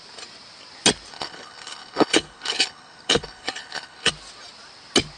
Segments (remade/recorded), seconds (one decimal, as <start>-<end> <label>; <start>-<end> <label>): 0.0-1.1 recorded; 1.1-4.1 remade; 4.1-5.2 recorded